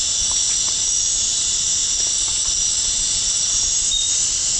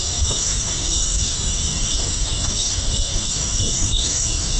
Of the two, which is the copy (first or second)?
second